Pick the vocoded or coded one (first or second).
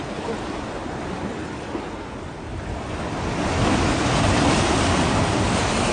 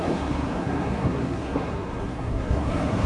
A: second